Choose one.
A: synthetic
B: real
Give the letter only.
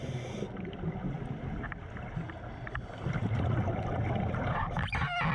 B